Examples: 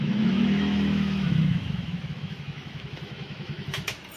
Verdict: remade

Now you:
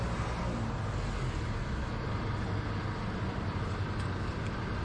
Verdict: recorded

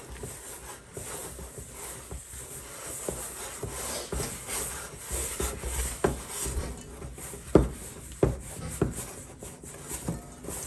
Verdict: recorded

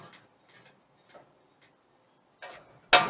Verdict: recorded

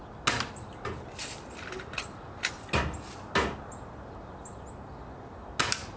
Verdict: recorded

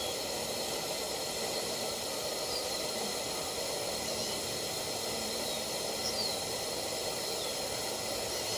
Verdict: remade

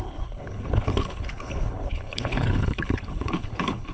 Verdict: remade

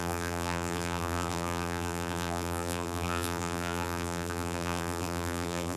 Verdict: remade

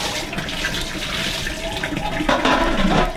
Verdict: recorded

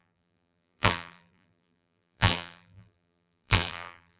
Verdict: remade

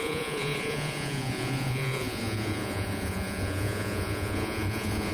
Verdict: remade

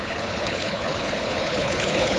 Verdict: remade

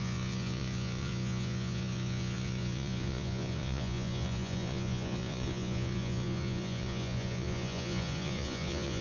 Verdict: remade